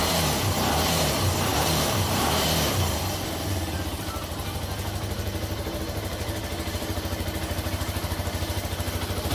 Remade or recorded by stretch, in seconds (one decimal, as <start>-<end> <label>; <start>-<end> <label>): 0.0-9.3 remade